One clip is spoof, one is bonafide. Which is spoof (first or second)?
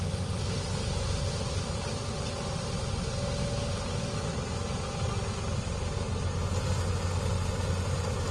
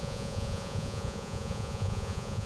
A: second